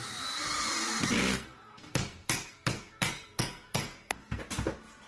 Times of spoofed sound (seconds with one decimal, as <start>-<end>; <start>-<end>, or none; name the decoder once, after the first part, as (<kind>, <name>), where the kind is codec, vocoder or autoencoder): 1.3-4.4 (codec, SNAC)